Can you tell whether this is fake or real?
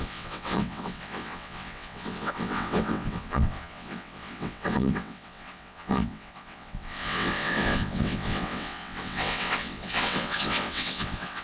fake